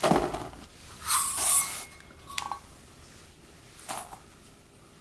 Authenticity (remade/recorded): recorded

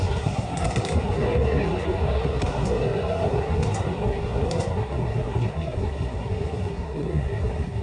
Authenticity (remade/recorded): remade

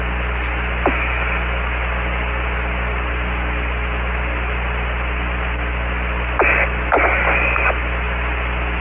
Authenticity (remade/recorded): recorded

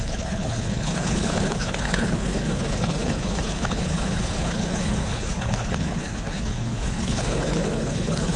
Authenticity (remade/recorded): remade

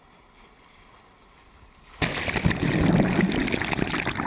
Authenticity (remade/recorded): recorded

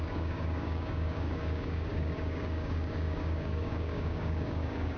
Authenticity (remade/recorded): remade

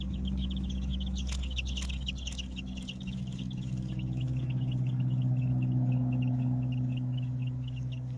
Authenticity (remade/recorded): remade